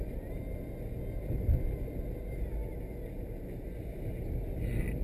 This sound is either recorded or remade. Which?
recorded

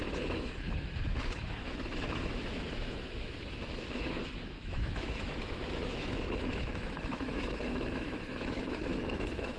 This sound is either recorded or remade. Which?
remade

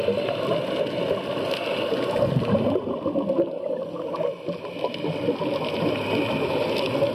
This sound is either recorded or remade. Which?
recorded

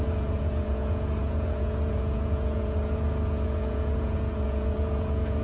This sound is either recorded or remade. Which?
remade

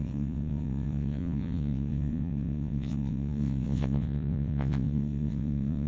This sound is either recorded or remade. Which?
remade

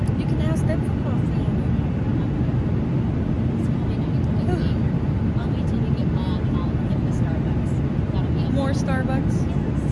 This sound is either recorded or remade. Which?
recorded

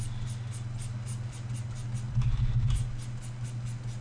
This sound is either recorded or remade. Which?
recorded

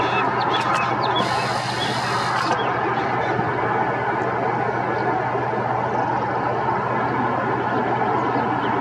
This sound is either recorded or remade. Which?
recorded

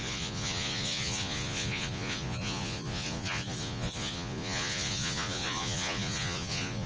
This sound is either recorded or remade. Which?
remade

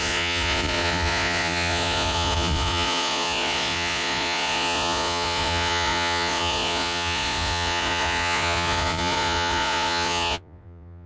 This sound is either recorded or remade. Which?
remade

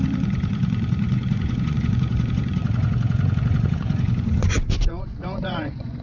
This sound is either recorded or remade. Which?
remade